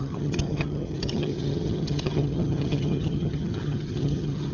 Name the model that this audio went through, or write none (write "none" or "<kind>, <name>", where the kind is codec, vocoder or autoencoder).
vocoder, HiFi-GAN